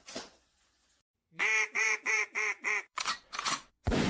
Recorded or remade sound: remade